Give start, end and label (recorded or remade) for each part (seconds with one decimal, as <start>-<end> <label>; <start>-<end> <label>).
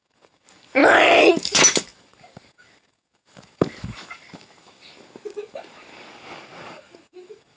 0.0-0.8 remade; 0.8-1.3 recorded; 1.3-7.6 remade